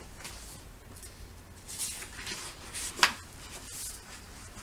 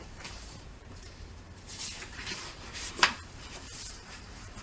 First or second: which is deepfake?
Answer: second